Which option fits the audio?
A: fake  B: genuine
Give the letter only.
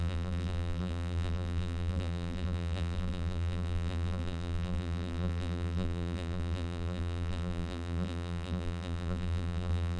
A